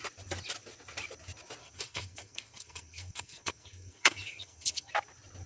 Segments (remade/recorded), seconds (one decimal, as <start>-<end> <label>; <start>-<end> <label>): 0.0-1.6 recorded; 1.6-4.9 remade; 4.9-5.5 recorded